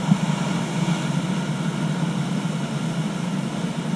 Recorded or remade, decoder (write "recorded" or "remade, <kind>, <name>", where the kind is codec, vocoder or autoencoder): recorded